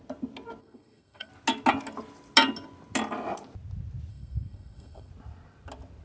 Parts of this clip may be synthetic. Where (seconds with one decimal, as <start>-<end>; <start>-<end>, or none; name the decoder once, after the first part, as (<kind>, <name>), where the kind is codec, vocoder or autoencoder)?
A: 0.6-1.3 (codec, SNAC); 4.1-5.1